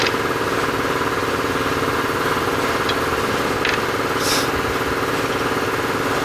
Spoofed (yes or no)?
no